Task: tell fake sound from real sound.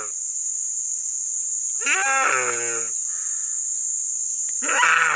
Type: real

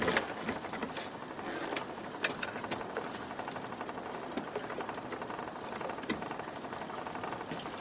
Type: real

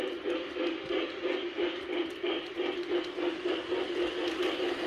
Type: real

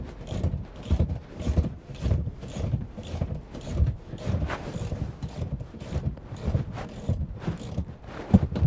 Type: fake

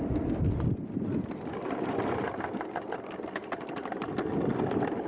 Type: real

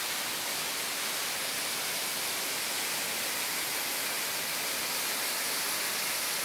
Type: real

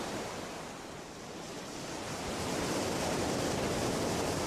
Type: fake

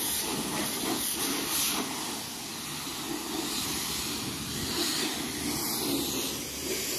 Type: real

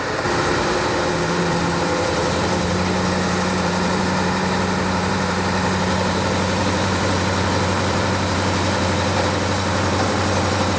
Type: fake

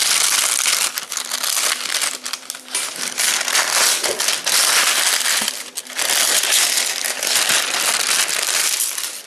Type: real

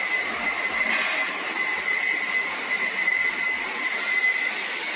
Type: real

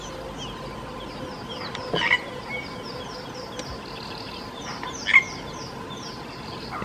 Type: real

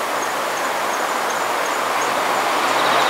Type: real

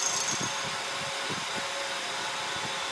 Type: real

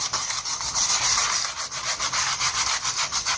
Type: real